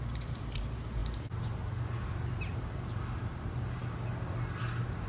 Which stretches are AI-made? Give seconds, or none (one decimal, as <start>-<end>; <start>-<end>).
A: 0.0-3.8; 4.6-5.1